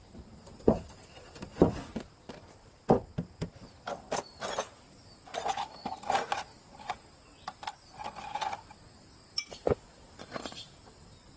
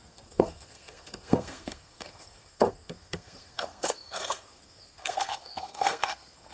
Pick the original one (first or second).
first